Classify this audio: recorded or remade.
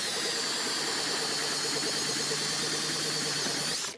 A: recorded